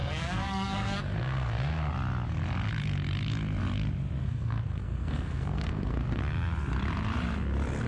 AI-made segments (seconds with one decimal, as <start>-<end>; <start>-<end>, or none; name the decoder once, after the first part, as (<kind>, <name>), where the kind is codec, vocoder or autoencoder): 0.0-1.9 (codec, SNAC); 4.2-6.2